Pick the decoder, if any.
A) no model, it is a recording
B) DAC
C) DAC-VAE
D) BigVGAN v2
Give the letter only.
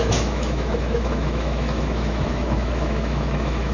C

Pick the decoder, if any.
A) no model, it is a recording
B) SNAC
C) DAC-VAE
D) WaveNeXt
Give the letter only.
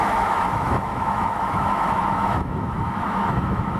C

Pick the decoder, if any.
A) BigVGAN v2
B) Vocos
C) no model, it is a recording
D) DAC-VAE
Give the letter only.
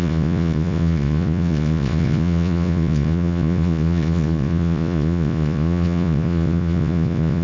B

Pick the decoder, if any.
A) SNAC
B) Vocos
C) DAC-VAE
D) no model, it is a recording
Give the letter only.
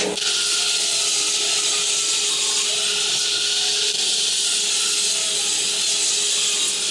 D